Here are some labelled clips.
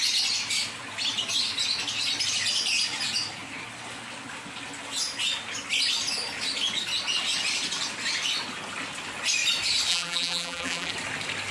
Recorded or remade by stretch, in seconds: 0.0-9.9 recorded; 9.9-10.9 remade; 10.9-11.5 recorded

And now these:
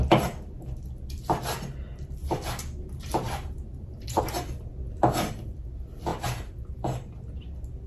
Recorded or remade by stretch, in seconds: 0.0-2.2 recorded; 2.2-4.2 remade; 4.2-6.1 recorded; 6.1-6.8 remade; 6.8-7.9 recorded